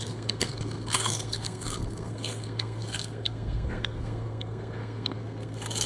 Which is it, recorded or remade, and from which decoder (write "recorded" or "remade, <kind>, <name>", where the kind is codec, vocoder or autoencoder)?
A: remade, codec, SNAC